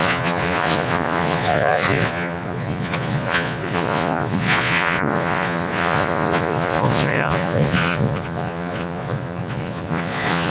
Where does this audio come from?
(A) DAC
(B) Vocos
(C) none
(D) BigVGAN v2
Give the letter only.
B